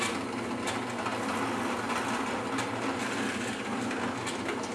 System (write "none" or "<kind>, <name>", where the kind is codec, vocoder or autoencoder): none